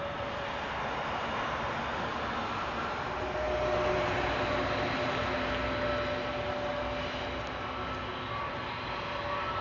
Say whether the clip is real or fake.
real